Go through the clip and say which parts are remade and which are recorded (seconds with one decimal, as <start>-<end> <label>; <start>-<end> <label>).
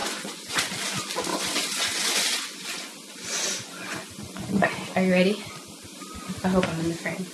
0.0-0.7 remade; 0.7-1.3 recorded; 1.3-4.7 remade; 4.7-7.3 recorded